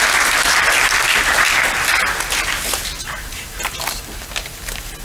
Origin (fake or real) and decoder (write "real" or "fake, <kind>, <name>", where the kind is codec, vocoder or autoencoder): real